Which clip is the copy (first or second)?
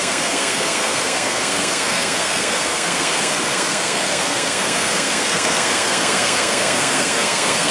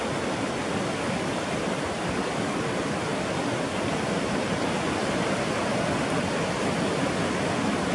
first